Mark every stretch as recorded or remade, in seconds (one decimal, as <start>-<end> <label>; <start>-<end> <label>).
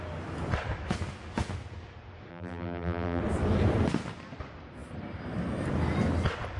0.0-2.3 recorded; 2.3-3.2 remade; 3.2-6.6 recorded